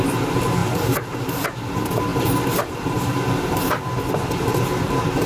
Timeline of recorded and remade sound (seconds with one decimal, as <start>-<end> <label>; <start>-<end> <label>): 0.0-2.1 recorded; 2.1-5.3 remade